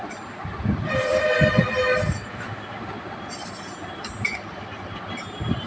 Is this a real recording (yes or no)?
no